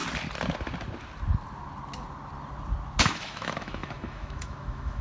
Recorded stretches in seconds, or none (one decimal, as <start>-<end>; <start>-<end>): 0.0-3.0